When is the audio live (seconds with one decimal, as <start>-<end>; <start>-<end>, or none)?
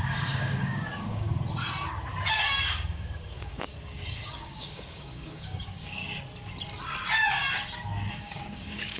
1.3-2.3; 6.0-8.1